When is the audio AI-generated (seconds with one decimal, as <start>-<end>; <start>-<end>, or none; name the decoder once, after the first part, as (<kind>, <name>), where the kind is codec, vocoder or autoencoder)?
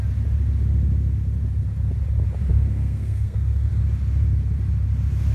2.5-3.7 (codec, SNAC)